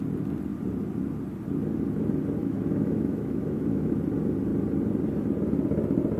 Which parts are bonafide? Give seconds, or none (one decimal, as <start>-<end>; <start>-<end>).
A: 0.0-2.4; 3.9-6.2